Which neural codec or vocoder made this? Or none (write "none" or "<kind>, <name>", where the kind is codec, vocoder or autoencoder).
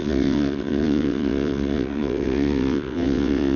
vocoder, WaveNeXt